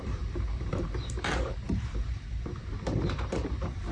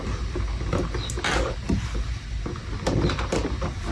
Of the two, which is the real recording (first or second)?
second